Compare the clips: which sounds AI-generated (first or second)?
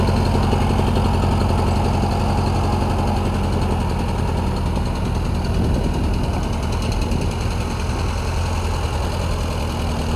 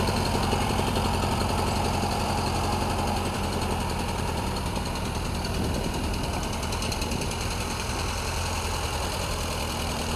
second